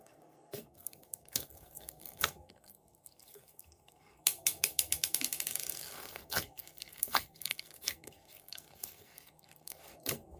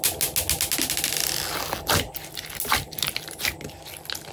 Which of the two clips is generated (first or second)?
first